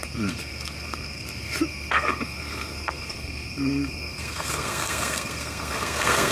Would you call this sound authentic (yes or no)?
no